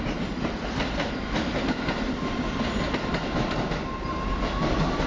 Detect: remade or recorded recorded